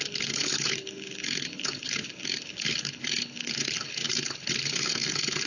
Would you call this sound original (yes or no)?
no